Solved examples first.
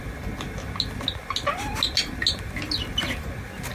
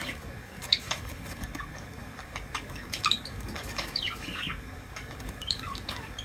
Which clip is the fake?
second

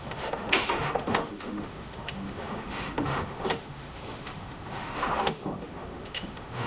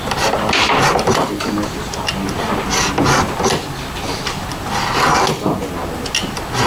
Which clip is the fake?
first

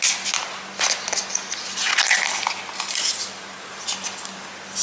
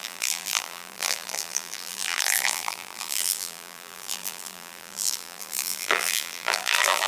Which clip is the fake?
second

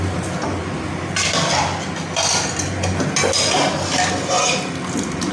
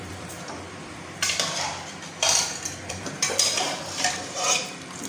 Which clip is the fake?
second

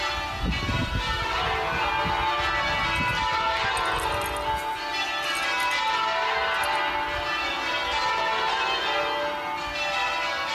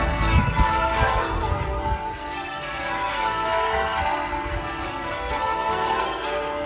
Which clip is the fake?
second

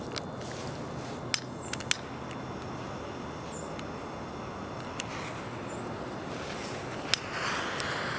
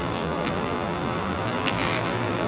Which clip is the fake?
second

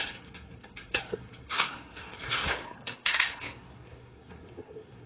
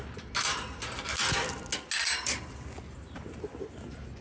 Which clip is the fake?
first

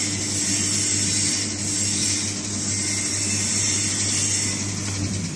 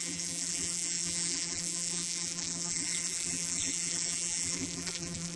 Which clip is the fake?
second